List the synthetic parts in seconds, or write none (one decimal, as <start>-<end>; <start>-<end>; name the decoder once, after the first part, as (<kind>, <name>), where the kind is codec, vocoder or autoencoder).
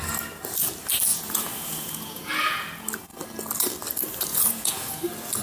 1.1-2.3 (vocoder, Vocos); 4.3-5.0